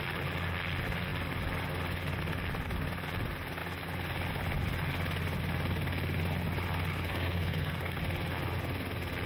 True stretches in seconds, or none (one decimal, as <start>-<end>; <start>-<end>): 0.0-6.9; 8.0-9.3